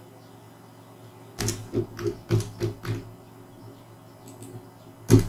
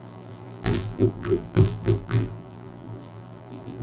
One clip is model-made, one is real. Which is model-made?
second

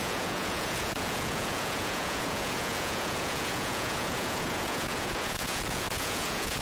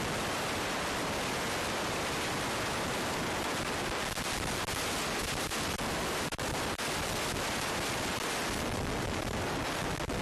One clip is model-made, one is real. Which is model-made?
first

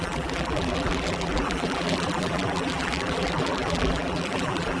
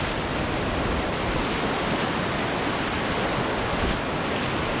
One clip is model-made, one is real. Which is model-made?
first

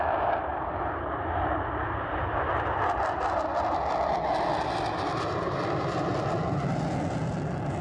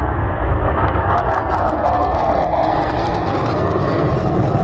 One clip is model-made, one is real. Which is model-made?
second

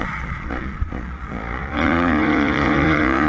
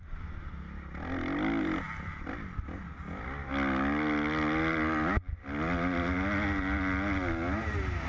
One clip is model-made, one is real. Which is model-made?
first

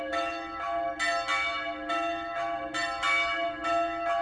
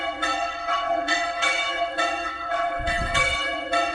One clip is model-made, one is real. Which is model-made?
second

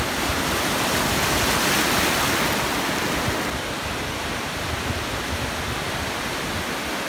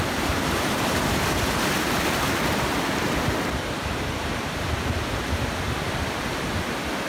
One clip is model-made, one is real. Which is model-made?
second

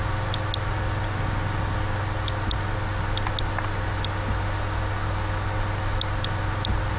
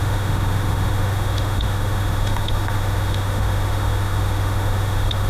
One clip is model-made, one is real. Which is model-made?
second